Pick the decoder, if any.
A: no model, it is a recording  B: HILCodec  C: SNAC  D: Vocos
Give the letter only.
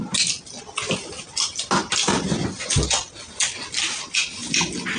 A